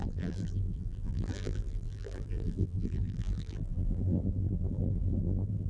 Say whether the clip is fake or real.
fake